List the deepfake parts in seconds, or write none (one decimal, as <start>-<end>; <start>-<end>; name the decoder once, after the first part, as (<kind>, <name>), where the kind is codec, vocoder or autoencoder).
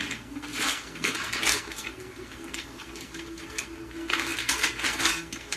0.0-5.6 (codec, SNAC)